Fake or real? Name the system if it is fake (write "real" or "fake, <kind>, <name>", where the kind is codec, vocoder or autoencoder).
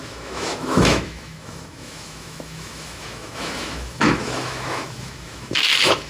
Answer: fake, autoencoder, DAC-VAE